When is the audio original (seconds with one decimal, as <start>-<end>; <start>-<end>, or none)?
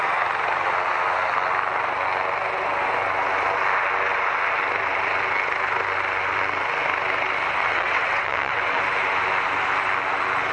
0.0-7.6; 8.8-10.5